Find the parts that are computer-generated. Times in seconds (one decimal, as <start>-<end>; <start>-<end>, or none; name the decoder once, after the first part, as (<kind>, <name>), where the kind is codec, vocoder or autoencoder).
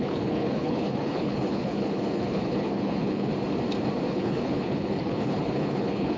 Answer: 0.0-3.3 (codec, HILCodec); 4.1-6.2